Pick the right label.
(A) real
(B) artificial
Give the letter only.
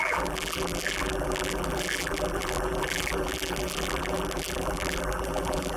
B